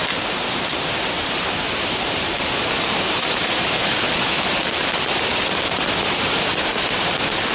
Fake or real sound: fake